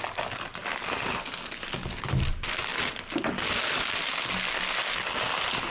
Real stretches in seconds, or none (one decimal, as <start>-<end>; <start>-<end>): 0.0-5.7